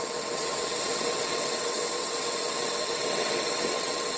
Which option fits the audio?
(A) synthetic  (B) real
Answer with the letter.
A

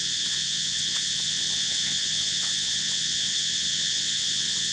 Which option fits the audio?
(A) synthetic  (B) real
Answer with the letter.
A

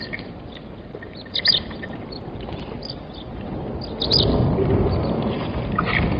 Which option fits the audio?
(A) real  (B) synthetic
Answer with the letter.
A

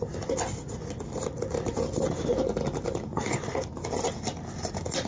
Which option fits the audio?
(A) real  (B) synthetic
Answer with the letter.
A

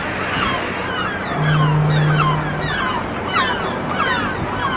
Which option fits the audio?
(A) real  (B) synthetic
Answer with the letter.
A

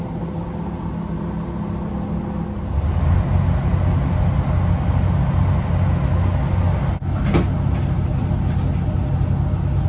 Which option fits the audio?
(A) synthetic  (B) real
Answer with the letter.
B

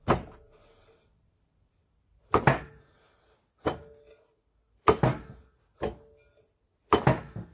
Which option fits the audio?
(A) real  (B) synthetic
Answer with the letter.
A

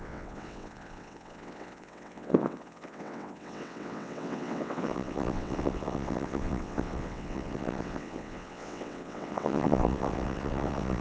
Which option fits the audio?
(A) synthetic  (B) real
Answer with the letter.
A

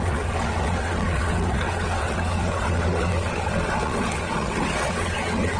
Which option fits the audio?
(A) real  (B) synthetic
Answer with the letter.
B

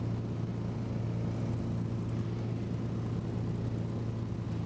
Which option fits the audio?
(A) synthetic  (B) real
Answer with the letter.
B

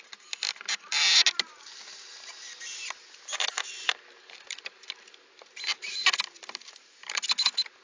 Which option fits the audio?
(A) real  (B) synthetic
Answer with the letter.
A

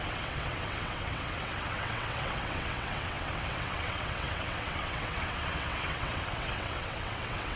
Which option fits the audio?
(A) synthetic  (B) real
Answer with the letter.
A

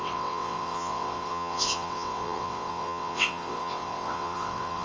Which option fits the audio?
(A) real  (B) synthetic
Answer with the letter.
B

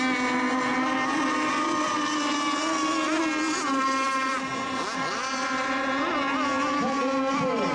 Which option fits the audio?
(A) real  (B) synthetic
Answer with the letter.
A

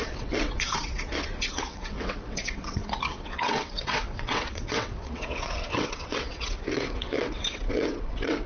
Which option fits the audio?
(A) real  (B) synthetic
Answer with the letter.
B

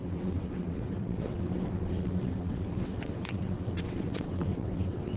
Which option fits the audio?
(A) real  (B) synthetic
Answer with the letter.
B